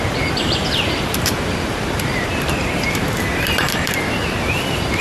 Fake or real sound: fake